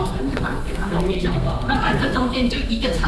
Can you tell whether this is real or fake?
fake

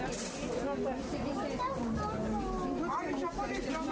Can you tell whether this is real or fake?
real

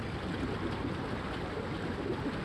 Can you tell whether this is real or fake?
real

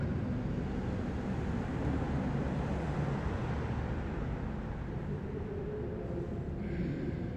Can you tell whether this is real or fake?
real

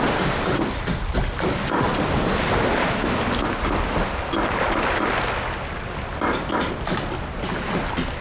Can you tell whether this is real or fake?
real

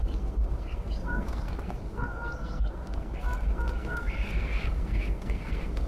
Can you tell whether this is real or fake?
fake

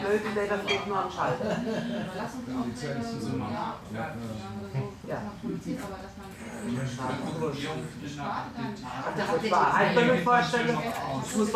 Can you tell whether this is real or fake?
real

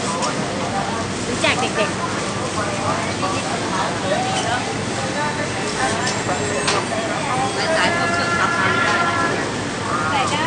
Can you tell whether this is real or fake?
real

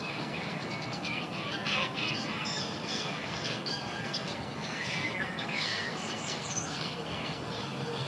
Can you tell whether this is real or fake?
fake